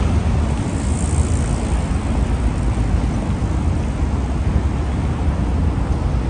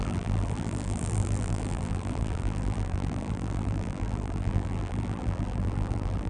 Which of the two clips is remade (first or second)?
second